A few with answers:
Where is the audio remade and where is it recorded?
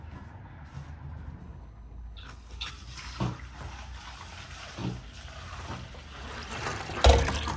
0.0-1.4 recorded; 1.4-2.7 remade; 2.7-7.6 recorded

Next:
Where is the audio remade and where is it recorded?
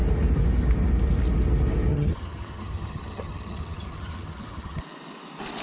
0.0-1.9 recorded; 1.9-4.8 remade; 4.8-5.6 recorded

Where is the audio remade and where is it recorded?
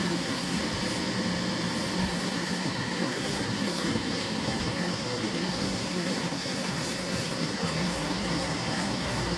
0.0-0.6 remade; 0.6-2.0 recorded; 2.0-9.4 remade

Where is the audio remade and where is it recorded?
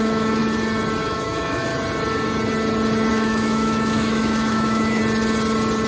0.0-0.4 remade; 0.4-1.0 recorded; 1.0-1.7 remade; 1.7-3.1 recorded; 3.1-5.0 remade; 5.0-5.9 recorded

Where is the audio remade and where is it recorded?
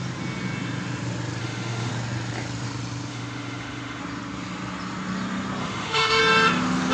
0.0-1.4 recorded; 1.4-1.9 remade; 1.9-3.1 recorded; 3.1-4.0 remade; 4.0-5.6 recorded; 5.6-6.2 remade; 6.2-6.9 recorded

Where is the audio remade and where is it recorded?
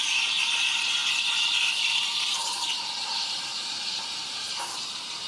0.0-1.0 remade; 1.0-1.7 recorded; 1.7-5.3 remade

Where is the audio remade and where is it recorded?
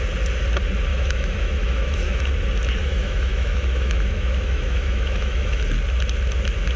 0.0-0.9 recorded; 0.9-2.2 remade; 2.2-2.8 recorded; 2.8-5.6 remade; 5.6-6.8 recorded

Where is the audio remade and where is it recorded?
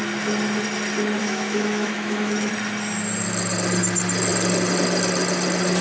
0.0-1.2 recorded; 1.2-2.5 remade; 2.5-5.8 recorded